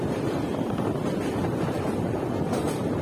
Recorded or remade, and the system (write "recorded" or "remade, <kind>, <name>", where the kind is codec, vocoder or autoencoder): remade, vocoder, BigVGAN v2